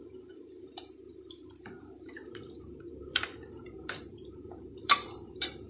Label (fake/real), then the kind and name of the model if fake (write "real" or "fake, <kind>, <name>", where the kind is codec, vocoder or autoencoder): fake, vocoder, BigVGAN v2